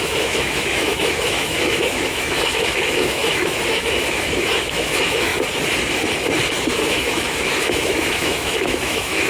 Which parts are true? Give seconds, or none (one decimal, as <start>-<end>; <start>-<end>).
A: 5.3-6.7